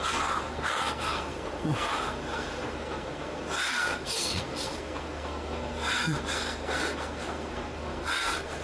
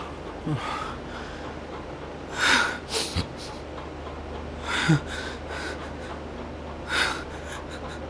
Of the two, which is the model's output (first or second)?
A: first